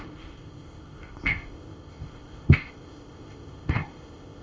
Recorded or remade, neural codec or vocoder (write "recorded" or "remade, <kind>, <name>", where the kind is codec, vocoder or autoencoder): remade, codec, ZipCodec